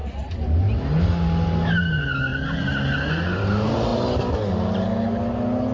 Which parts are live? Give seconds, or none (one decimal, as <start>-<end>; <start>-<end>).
0.0-5.7